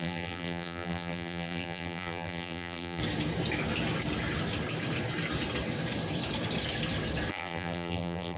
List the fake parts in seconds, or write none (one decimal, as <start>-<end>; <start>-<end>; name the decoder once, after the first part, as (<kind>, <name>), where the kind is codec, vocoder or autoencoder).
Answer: 0.0-3.0 (vocoder, BigVGAN v2); 7.3-8.4